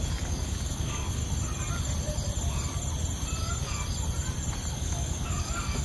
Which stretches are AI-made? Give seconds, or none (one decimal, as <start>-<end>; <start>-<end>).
0.0-1.2; 4.7-5.8

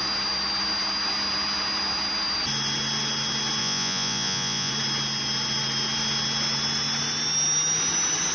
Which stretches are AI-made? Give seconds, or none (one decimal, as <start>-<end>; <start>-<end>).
3.6-4.7

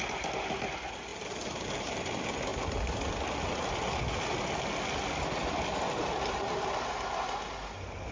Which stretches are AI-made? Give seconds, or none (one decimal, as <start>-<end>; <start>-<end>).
none

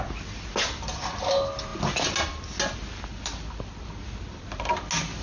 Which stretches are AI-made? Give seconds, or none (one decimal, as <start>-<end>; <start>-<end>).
none

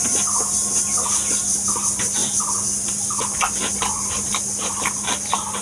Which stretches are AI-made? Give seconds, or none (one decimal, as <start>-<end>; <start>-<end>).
none